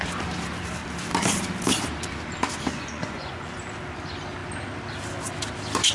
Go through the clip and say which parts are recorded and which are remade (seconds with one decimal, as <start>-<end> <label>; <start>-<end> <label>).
0.0-2.7 recorded; 2.7-3.6 remade; 3.6-5.9 recorded